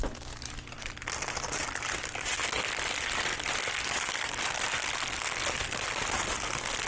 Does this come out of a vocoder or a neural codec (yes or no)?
no